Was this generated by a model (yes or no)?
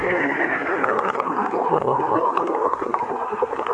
yes